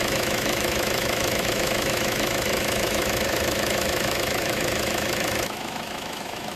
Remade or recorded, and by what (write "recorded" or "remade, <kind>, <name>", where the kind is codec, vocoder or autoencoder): remade, autoencoder, DAC-VAE